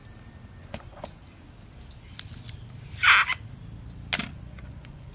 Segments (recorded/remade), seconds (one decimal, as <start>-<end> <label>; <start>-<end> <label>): 0.0-0.6 recorded; 0.6-1.2 remade; 1.2-4.3 recorded; 4.3-5.1 remade